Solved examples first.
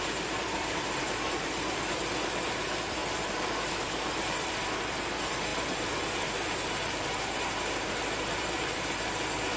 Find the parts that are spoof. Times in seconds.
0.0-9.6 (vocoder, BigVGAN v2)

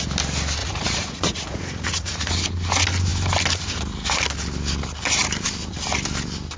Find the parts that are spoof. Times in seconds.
0.6-2.3 (vocoder, Vocos)

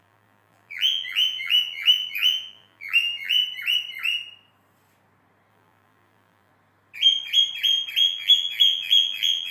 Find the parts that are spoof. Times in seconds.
0.0-3.4 (vocoder, BigVGAN v2); 5.5-6.5; 8.0-9.5